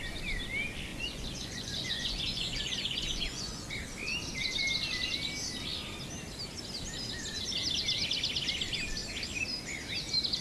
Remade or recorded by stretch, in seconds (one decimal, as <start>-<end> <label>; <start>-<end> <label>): 0.0-0.9 recorded; 0.9-3.7 remade; 3.7-10.4 recorded